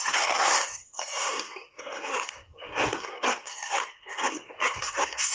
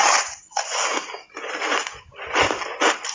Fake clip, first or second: first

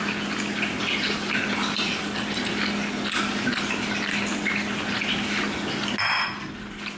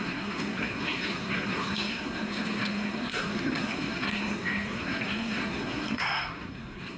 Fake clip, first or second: second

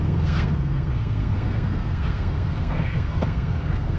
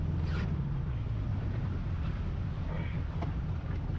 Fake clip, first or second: first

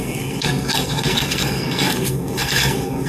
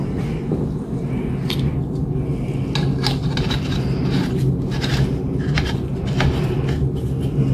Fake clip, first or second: first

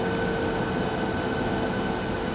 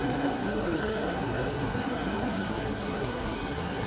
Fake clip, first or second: second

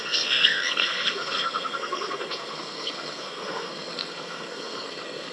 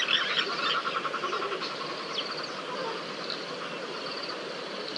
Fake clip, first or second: first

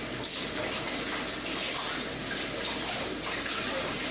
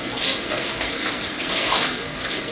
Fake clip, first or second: second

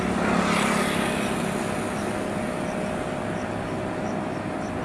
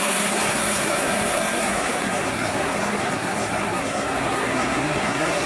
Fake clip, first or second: second